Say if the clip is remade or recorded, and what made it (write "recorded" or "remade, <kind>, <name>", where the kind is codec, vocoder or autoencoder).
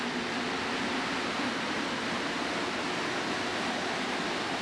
recorded